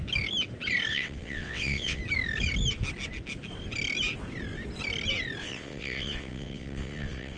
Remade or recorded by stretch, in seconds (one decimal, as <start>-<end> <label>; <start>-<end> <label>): 0.0-0.9 recorded; 0.9-2.0 remade; 2.0-5.4 recorded; 5.4-7.4 remade